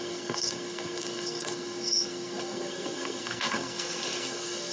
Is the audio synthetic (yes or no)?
yes